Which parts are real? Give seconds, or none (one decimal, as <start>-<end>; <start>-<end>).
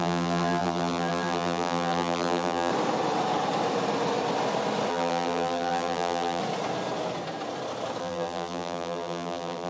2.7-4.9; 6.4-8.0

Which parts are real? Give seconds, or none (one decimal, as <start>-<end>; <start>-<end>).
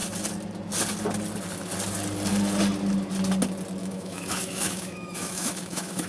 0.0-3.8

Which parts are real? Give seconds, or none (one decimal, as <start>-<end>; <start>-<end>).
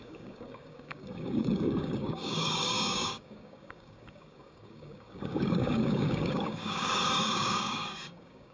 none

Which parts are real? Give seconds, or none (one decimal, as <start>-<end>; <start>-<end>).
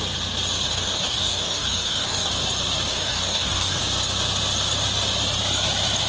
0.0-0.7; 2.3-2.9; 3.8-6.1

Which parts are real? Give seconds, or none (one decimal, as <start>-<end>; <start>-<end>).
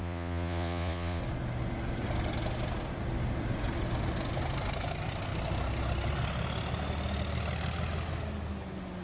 1.2-9.0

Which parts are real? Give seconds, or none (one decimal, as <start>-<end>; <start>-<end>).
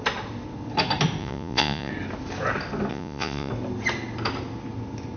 0.0-1.2; 1.9-2.9; 3.5-5.2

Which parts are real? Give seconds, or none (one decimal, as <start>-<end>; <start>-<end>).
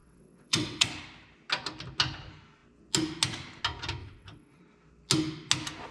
0.9-4.0; 4.6-5.9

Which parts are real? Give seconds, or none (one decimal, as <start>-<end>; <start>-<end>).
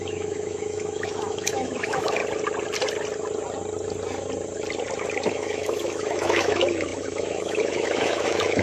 2.2-5.3